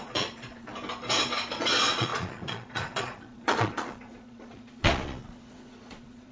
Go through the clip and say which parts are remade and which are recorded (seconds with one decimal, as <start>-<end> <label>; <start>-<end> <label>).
0.0-0.7 remade; 0.7-1.5 recorded; 1.5-6.3 remade